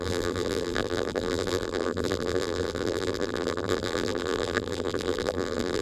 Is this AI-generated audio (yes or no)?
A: yes